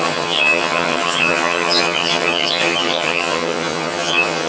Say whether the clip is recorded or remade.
remade